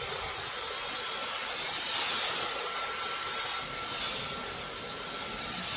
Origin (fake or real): real